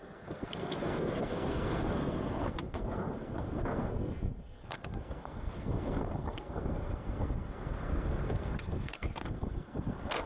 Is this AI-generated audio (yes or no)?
yes